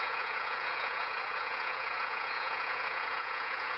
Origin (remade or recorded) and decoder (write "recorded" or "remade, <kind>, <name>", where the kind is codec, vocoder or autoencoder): remade, vocoder, Vocos